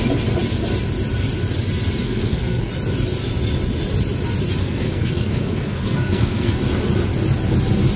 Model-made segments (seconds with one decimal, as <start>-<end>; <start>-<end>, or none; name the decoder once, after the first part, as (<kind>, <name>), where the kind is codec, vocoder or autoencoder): 2.0-2.7 (codec, SNAC); 4.6-6.6